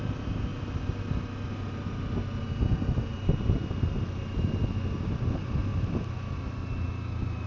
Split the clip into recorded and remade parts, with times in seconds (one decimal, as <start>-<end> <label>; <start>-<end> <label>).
0.0-0.5 remade; 0.5-5.0 recorded; 5.0-5.7 remade; 5.7-7.5 recorded